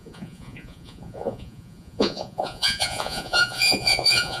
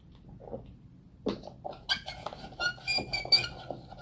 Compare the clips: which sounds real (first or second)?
second